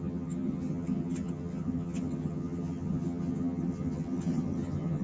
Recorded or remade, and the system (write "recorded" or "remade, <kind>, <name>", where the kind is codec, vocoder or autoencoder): remade, vocoder, HiFi-GAN